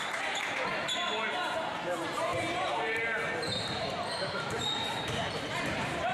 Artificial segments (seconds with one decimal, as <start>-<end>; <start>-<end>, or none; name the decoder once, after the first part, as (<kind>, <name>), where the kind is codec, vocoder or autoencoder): 0.0-0.7 (vocoder, BigVGAN v2); 1.9-6.1